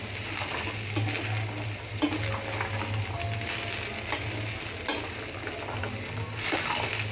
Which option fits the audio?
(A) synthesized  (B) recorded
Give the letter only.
B